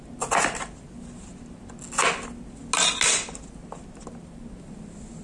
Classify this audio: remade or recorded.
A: recorded